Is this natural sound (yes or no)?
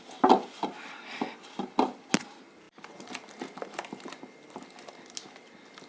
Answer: yes